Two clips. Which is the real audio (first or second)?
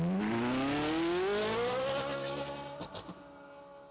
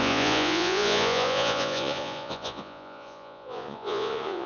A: first